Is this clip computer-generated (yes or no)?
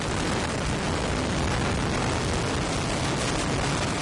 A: no